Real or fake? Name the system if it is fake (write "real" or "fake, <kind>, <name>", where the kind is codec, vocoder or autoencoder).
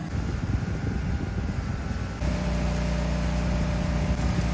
real